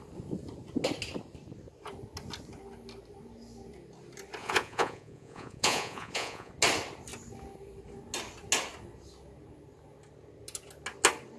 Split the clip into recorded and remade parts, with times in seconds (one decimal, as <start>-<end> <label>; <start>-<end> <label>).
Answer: 0.0-4.4 recorded; 4.4-6.5 remade; 6.5-11.4 recorded